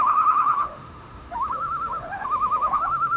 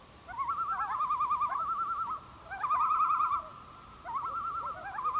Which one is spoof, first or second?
first